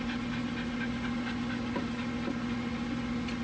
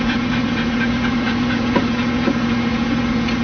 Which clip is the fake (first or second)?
second